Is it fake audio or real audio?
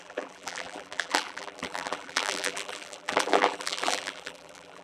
fake